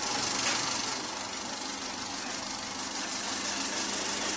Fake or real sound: real